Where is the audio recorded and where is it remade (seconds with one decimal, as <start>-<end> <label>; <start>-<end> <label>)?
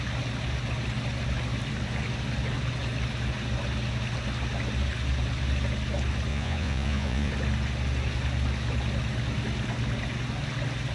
0.0-6.3 recorded; 6.3-7.3 remade; 7.3-10.9 recorded